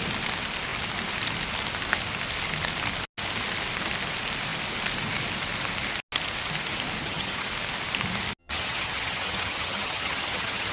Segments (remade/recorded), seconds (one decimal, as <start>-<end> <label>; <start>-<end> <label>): 0.0-7.0 recorded; 7.0-7.5 remade; 7.5-8.4 recorded; 8.4-10.7 remade